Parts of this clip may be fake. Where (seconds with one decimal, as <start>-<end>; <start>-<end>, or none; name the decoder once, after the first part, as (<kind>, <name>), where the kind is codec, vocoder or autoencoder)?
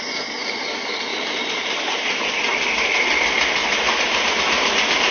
1.1-2.3 (vocoder, BigVGAN v2); 3.6-4.3